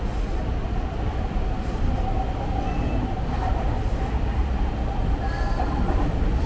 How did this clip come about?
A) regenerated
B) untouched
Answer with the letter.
B